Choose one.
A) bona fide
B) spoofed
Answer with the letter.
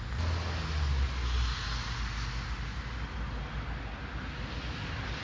A